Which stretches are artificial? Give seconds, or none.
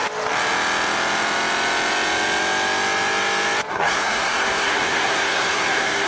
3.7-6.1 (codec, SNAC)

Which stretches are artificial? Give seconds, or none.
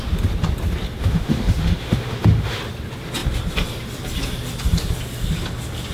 1.0-2.6 (autoencoder, DAC-VAE)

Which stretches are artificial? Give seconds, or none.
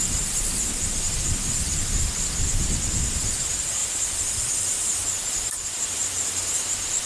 0.0-7.1 (vocoder, BigVGAN v2)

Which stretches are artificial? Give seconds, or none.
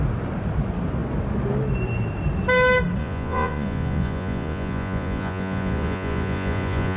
3.0-7.0 (vocoder, Vocos)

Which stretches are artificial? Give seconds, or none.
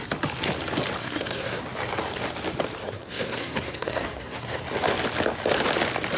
1.0-1.6 (codec, SNAC); 2.8-4.6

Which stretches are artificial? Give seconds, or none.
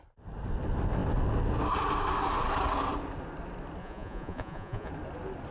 3.8-4.9 (vocoder, Vocos)